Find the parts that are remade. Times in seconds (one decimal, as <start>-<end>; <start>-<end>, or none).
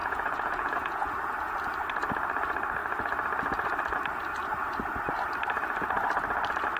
0.0-1.1